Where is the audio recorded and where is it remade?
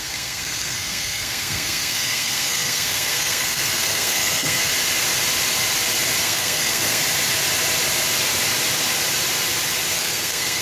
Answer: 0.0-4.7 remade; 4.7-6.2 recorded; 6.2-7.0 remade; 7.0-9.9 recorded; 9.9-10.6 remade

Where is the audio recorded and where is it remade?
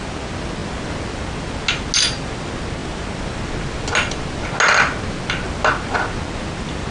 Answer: 0.0-6.9 recorded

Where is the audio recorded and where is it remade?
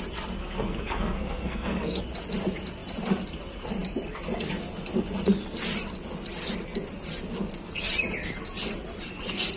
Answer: 0.0-0.4 recorded; 0.4-2.0 remade; 2.0-9.6 recorded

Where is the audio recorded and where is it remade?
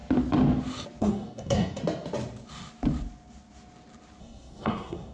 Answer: 0.0-1.0 recorded; 1.0-1.8 remade; 1.8-4.2 recorded; 4.2-5.1 remade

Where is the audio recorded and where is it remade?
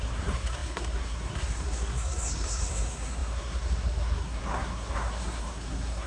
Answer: 0.0-6.1 remade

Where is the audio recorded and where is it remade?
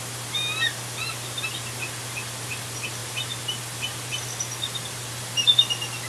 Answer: 0.0-6.1 recorded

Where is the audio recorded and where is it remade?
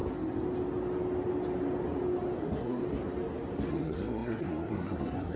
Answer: 0.0-2.4 recorded; 2.4-2.8 remade; 2.8-3.7 recorded; 3.7-5.4 remade